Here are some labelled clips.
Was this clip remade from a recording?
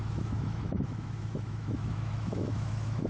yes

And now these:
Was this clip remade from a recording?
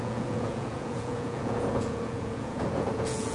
yes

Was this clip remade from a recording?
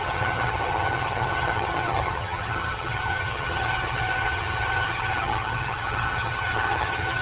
yes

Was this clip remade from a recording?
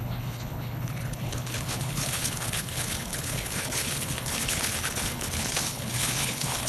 yes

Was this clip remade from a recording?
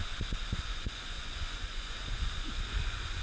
yes